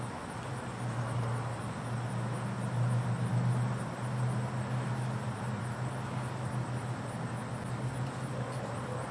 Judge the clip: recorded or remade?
recorded